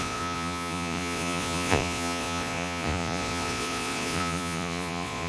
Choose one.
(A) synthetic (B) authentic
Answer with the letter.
A